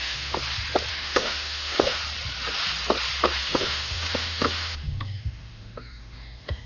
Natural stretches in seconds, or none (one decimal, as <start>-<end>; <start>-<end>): 0.4-0.9; 2.0-3.4